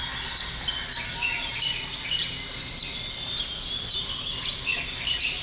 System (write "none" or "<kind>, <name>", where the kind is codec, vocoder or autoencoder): none